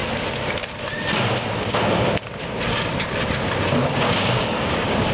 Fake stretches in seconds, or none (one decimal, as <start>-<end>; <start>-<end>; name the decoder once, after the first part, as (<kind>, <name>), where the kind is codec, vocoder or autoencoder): 3.8-5.1 (codec, DAC)